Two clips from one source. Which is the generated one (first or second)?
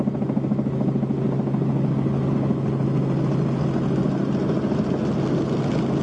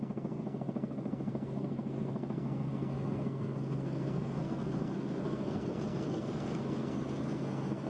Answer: second